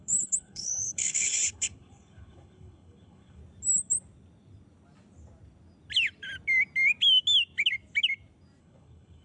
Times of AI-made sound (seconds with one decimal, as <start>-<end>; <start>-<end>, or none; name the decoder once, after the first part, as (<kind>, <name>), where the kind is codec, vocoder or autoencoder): 0.0-3.4 (codec, HILCodec); 8.6-9.2

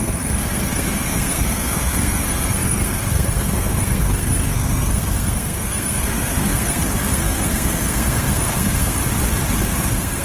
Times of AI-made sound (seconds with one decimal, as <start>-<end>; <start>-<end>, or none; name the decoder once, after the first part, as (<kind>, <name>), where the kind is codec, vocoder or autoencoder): 0.0-9.0 (codec, SNAC); 9.5-10.2

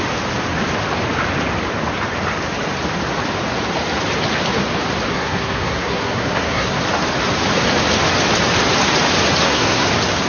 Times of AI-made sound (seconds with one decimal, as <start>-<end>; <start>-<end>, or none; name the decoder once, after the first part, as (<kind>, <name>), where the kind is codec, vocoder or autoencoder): 5.1-6.8 (codec, SNAC); 9.4-9.9

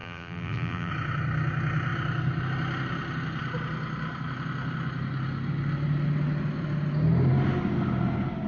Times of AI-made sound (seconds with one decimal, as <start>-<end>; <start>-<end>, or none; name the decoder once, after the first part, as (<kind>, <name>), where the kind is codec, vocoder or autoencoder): 0.0-0.9 (vocoder, BigVGAN v2)

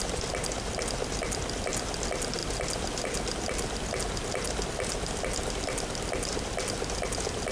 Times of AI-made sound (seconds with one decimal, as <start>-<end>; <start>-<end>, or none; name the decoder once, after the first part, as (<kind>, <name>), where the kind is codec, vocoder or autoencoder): none

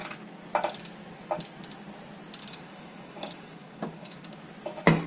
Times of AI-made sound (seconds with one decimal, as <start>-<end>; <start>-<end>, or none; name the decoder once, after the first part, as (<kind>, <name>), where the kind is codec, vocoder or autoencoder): 2.4-4.3 (codec, DAC)

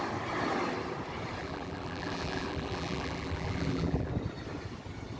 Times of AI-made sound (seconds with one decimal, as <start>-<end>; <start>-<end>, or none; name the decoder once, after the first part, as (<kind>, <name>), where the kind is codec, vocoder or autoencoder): 1.4-4.1 (vocoder, BigVGAN v2)